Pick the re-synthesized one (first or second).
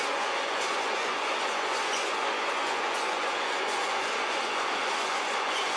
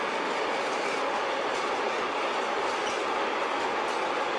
first